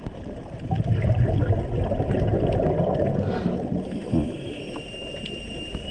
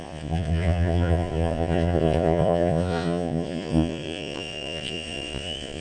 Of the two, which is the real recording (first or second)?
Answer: first